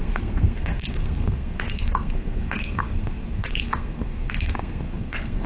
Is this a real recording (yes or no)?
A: no